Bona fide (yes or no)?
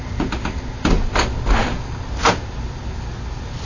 yes